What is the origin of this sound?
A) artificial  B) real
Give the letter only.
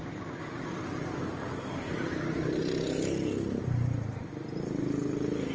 B